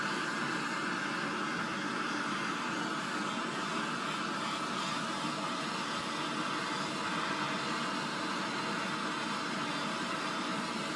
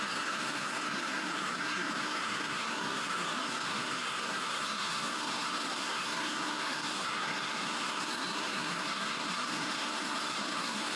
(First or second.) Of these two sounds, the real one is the first